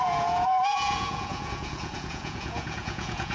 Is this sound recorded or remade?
remade